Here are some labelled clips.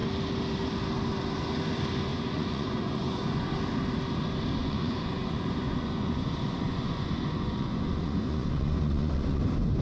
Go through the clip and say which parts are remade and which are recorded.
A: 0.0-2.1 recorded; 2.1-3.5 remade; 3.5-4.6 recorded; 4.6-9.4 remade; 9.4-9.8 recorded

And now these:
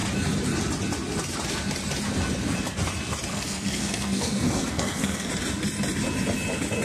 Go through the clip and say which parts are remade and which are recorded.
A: 0.0-3.3 recorded; 3.3-5.3 remade; 5.3-6.8 recorded